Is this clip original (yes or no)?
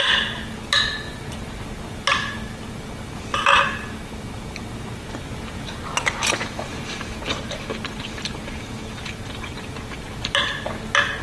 yes